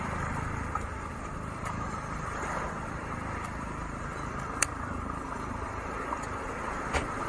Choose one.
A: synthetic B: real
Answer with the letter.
A